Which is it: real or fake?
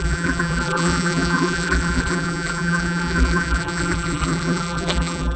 fake